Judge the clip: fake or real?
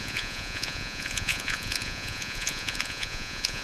fake